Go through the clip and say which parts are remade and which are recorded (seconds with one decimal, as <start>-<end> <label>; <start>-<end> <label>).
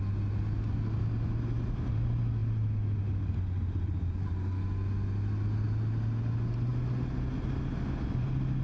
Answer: 0.0-8.6 recorded